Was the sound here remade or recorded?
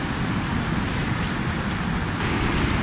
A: recorded